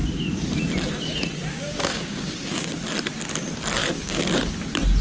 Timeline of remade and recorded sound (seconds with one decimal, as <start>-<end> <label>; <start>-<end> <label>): 0.0-1.5 recorded; 1.5-2.7 remade; 2.7-3.8 recorded; 3.8-4.4 remade; 4.4-5.0 recorded